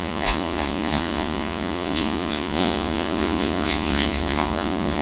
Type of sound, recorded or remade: remade